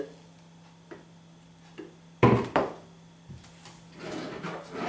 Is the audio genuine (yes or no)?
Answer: yes